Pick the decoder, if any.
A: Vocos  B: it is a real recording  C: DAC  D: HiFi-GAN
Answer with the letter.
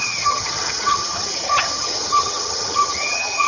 D